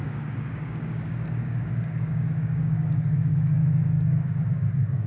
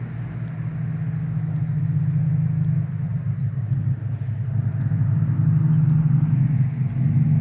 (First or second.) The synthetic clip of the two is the first